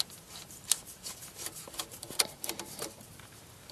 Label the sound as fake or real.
fake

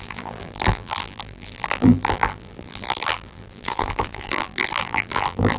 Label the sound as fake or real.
fake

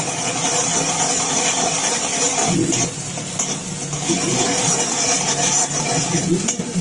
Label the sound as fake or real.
real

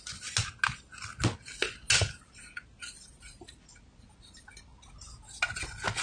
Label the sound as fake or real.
real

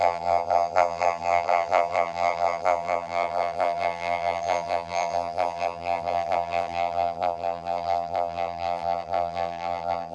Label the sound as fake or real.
fake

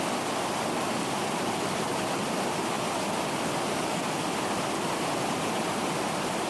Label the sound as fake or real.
real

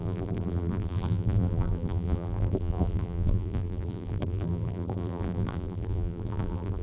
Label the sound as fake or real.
fake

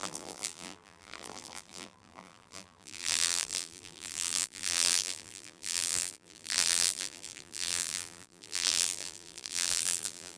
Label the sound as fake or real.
fake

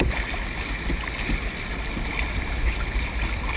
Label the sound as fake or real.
real